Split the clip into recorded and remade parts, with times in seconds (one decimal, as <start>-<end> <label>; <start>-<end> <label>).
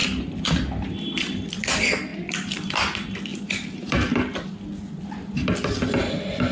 0.0-1.7 remade; 1.7-2.1 recorded; 2.1-2.7 remade; 2.7-3.3 recorded; 3.3-6.1 remade; 6.1-6.5 recorded